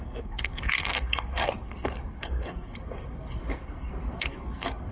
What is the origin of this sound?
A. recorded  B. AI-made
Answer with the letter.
B